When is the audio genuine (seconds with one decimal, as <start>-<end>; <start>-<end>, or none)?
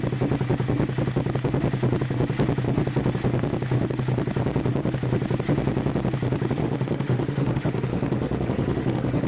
0.0-6.6